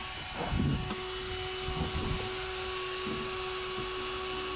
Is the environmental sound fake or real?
real